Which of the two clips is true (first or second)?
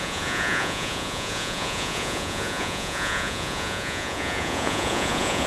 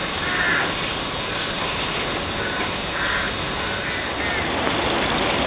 second